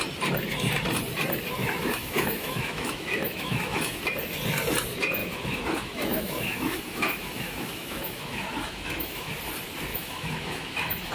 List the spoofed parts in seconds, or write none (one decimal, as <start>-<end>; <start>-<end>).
1.6-4.0; 5.2-9.3; 9.9-11.1